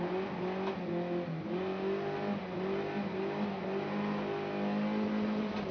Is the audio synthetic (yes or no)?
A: no